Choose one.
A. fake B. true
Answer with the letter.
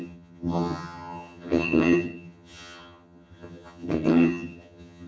A